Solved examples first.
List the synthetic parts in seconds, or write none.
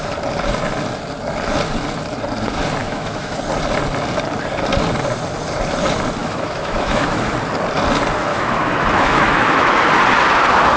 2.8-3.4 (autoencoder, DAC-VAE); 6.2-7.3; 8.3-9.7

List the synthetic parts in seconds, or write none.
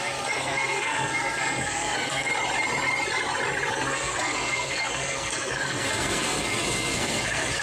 0.0-2.3 (codec, SNAC); 3.7-7.6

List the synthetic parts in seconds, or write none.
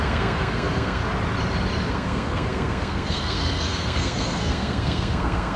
0.0-1.0 (codec, SNAC); 1.9-5.6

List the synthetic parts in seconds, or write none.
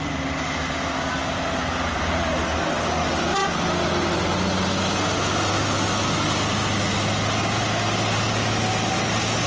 none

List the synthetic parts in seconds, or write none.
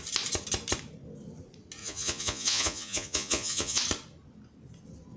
1.8-3.8 (vocoder, Vocos)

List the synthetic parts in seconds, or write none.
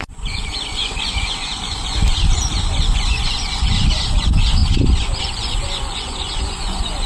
0.0-4.6 (vocoder, Vocos); 5.2-7.1